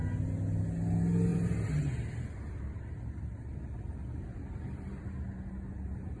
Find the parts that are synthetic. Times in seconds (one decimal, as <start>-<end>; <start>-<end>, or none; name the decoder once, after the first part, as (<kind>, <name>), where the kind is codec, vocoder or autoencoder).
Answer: 1.3-5.0 (vocoder, BigVGAN v2)